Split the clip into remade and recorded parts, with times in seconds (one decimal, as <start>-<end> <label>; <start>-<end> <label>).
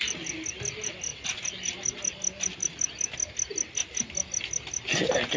0.0-5.4 recorded